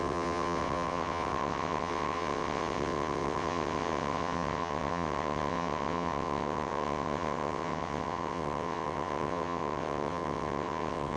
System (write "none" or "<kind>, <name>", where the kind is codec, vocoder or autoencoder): vocoder, WaveNeXt